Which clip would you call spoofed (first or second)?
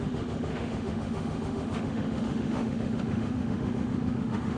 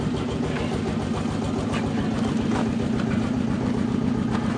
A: first